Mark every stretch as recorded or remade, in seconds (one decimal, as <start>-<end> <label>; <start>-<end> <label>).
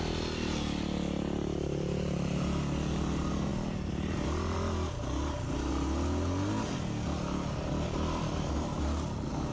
0.0-9.5 recorded